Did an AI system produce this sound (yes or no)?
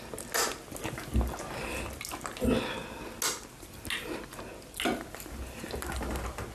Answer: no